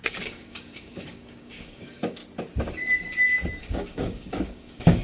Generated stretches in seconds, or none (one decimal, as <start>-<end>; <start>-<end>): 0.0-2.2; 3.6-5.0